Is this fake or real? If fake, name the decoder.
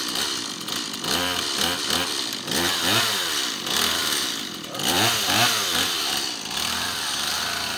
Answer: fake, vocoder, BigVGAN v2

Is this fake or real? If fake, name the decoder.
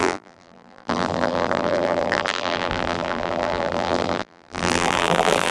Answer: fake, vocoder, BigVGAN v2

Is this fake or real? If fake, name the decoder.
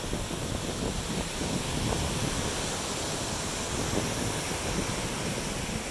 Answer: real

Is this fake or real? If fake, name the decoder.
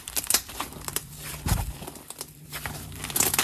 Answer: fake, vocoder, BigVGAN v2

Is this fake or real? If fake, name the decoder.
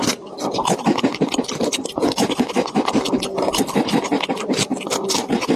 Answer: real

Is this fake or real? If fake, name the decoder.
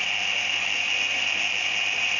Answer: fake, vocoder, BigVGAN v2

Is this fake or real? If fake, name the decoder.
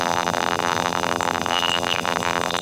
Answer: fake, vocoder, BigVGAN v2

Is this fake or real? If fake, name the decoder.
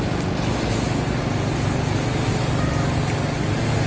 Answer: real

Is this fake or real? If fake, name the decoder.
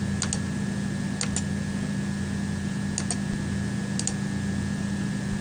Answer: real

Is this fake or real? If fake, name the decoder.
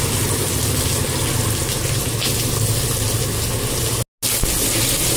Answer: real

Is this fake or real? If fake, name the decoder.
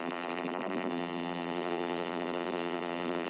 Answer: fake, vocoder, BigVGAN v2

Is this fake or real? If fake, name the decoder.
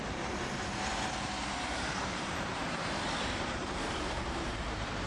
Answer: fake, vocoder, BigVGAN v2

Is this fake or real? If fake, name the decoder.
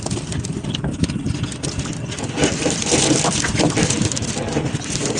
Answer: real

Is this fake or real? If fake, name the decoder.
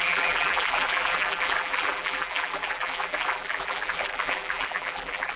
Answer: fake, vocoder, BigVGAN v2